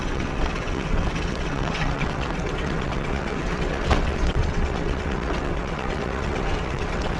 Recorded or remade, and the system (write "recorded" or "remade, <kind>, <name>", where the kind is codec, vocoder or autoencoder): remade, vocoder, WaveNeXt